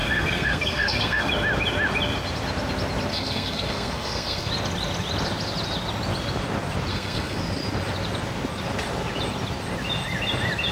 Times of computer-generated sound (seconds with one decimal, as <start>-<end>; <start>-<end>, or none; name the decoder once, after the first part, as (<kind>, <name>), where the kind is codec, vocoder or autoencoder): 0.0-1.3 (codec, SNAC); 3.1-4.5; 6.9-7.4